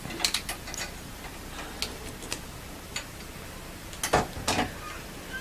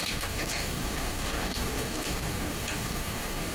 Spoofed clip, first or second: second